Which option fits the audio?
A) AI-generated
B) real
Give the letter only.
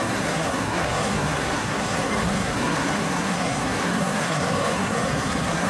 A